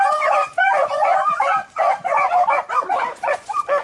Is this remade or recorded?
remade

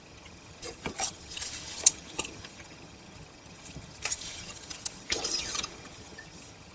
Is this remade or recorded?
remade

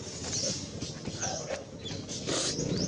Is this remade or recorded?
recorded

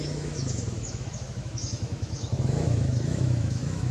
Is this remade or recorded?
remade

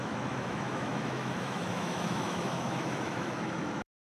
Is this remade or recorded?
remade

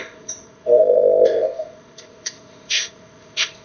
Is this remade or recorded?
remade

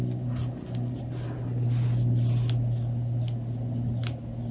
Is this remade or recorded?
recorded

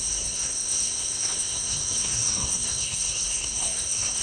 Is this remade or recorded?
remade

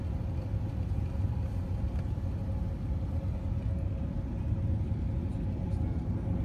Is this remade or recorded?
recorded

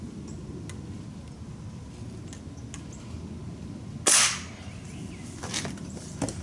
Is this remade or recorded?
recorded